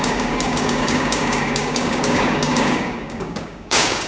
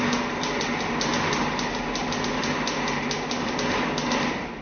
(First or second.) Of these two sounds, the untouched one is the second